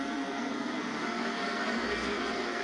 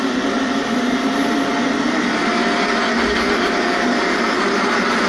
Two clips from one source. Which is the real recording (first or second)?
second